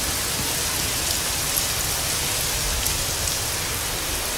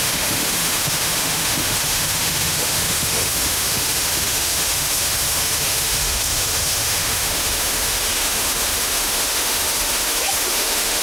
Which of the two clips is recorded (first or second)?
first